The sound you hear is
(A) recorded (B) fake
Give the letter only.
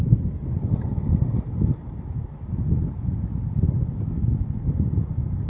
A